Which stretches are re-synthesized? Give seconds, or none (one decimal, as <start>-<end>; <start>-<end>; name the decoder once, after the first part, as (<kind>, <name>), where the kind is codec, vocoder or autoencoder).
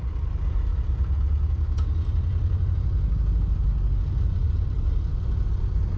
none